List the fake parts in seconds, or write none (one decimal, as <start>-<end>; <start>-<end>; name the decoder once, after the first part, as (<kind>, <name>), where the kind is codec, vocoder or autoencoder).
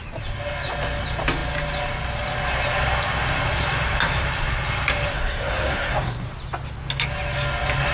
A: 5.1-6.3 (codec, SNAC)